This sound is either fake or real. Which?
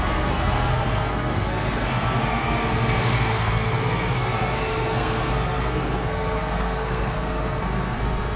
fake